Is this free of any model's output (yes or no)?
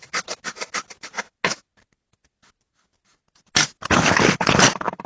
yes